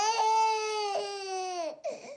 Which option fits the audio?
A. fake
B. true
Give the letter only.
B